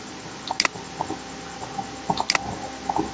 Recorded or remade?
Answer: recorded